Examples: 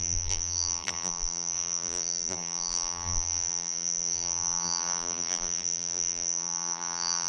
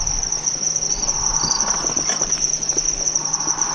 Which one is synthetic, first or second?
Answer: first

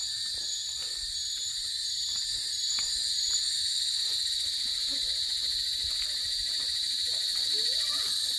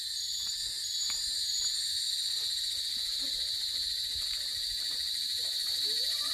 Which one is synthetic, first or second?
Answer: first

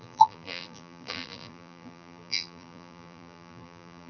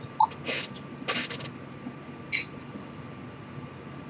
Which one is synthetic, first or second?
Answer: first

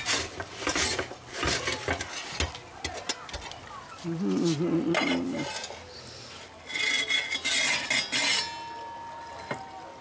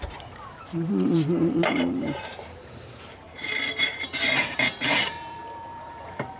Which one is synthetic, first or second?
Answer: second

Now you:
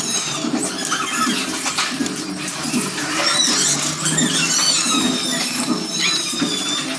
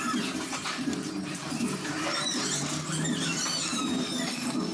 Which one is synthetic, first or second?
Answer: second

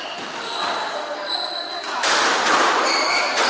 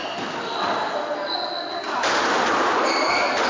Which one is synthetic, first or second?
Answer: first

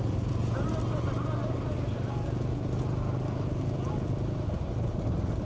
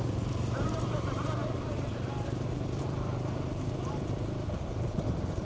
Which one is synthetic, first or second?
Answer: second